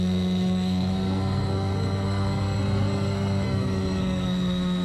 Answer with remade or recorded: remade